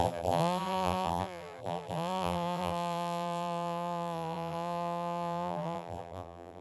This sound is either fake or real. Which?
fake